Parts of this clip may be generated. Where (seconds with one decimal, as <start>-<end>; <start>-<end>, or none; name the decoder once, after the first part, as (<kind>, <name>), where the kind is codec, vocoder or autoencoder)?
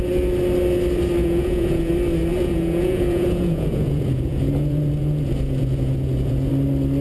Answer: 1.2-1.9 (vocoder, Vocos); 2.3-6.5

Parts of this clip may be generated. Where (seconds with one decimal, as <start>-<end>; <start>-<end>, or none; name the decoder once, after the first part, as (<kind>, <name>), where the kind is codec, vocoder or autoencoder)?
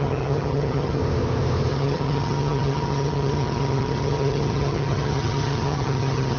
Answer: 0.0-1.0 (vocoder, HiFi-GAN); 1.7-6.4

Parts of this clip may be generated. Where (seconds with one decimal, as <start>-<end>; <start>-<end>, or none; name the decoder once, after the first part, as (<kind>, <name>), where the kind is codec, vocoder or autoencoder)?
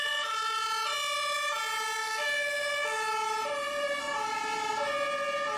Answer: 2.0-3.1 (vocoder, BigVGAN v2)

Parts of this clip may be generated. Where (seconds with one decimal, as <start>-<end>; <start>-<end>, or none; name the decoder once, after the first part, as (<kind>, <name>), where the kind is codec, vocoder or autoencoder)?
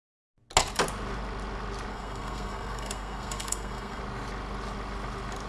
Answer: 1.9-4.0 (codec, SNAC)